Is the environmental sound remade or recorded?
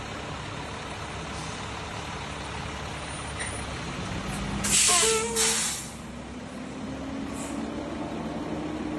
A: recorded